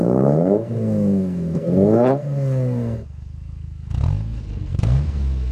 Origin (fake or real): fake